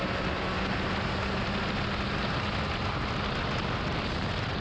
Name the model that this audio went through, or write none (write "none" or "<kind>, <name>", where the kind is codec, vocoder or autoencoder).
none